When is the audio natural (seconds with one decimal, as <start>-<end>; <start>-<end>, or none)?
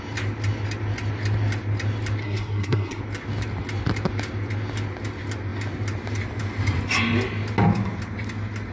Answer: 0.0-2.2; 3.0-8.7